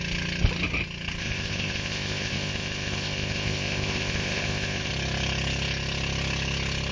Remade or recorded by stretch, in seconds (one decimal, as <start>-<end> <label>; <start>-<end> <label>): 0.0-1.2 recorded; 1.2-4.9 remade; 4.9-6.9 recorded